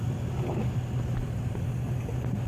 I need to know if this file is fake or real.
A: real